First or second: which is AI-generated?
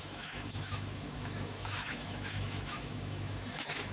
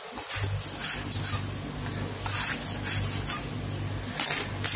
first